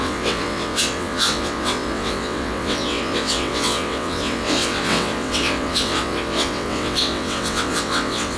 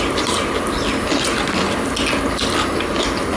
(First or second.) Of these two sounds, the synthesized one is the first